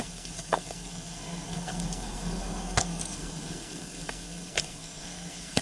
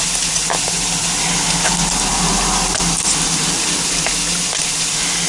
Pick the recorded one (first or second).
second